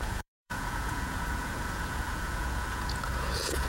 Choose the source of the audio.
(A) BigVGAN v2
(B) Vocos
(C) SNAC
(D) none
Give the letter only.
B